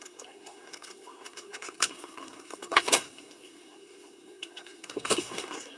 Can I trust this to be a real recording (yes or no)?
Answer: no